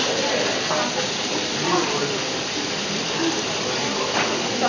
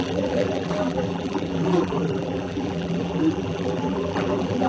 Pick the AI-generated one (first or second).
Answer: second